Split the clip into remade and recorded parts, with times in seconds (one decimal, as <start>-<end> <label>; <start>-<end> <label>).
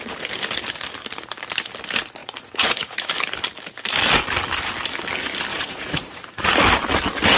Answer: 0.0-2.2 recorded; 2.2-3.1 remade; 3.1-5.5 recorded; 5.5-6.6 remade; 6.6-7.4 recorded